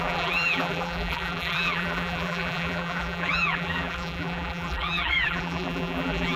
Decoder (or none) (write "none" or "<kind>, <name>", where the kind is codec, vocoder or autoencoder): vocoder, BigVGAN v2